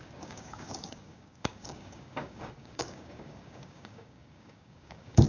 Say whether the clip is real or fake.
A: fake